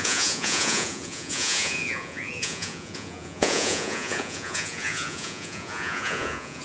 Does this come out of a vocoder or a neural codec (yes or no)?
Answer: yes